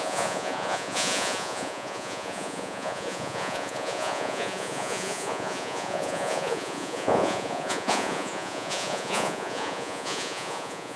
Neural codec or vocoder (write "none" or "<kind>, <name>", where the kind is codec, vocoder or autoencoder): vocoder, Vocos